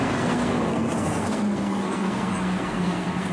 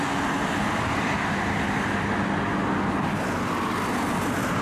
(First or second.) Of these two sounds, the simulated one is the first